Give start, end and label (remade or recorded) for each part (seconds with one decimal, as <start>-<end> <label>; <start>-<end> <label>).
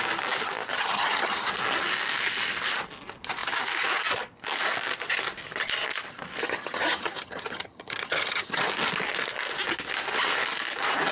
0.0-0.7 recorded; 0.7-1.5 remade; 1.5-6.4 recorded; 6.4-8.7 remade; 8.7-11.1 recorded